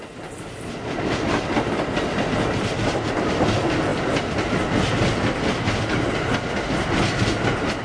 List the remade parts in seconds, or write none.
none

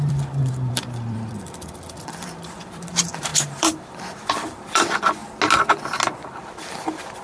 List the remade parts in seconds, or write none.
0.0-5.2; 6.3-7.2

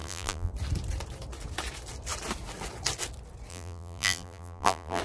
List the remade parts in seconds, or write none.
0.0-0.5; 3.5-5.0

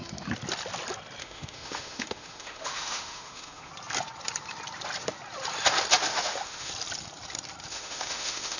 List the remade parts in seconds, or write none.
1.2-3.7; 6.1-6.7; 7.7-8.6

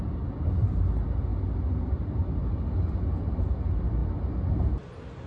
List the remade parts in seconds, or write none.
none

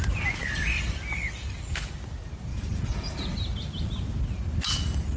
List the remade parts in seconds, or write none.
2.5-3.1

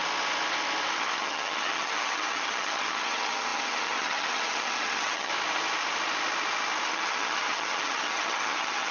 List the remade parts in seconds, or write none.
1.0-5.3; 6.9-8.9

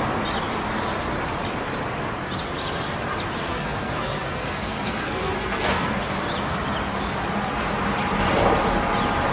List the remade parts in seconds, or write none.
3.5-6.0